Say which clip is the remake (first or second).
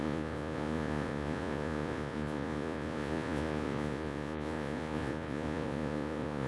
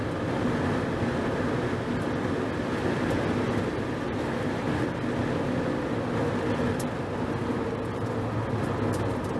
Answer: first